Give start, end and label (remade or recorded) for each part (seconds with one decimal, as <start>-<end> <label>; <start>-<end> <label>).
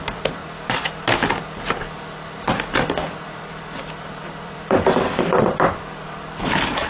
0.0-0.4 remade; 0.4-4.1 recorded; 4.1-6.9 remade